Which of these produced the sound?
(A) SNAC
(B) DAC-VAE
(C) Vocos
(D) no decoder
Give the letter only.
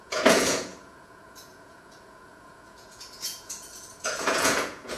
C